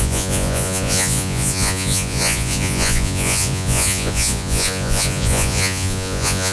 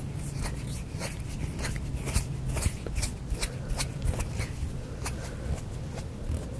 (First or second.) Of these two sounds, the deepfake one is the first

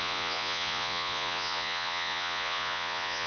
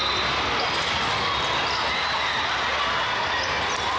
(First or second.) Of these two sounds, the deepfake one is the first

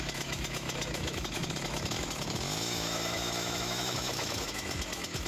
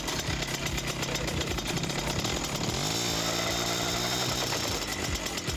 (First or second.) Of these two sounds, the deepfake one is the first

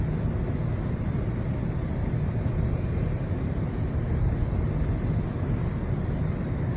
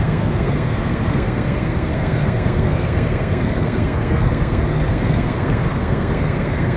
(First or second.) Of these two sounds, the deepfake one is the second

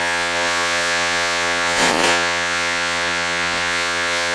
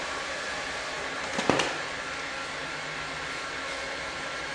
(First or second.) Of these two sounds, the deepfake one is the first